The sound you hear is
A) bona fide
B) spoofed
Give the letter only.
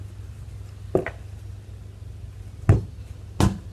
A